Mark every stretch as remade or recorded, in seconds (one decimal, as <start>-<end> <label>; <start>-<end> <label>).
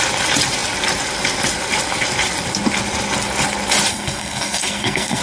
0.0-3.9 recorded; 3.9-5.2 remade